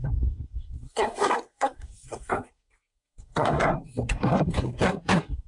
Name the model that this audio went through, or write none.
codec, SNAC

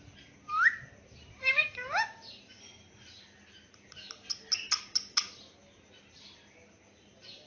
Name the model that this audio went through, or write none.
none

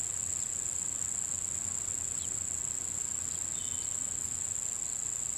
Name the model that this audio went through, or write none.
none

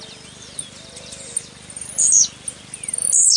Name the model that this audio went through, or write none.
none